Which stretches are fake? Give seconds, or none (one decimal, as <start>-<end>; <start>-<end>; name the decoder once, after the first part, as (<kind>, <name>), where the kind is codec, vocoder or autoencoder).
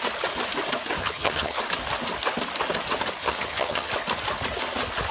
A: 1.0-1.6 (vocoder, HiFi-GAN); 3.2-3.9